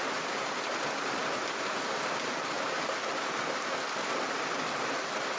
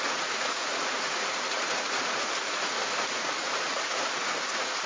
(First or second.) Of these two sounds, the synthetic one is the second